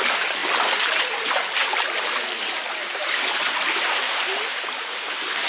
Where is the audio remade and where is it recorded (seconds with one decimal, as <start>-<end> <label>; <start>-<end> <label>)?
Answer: 0.0-5.5 recorded